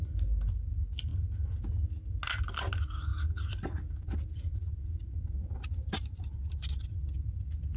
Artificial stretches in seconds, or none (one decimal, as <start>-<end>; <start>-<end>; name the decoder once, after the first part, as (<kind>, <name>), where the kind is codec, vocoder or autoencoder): none